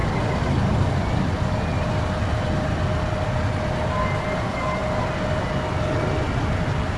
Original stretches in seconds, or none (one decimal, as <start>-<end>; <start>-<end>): 0.0-7.0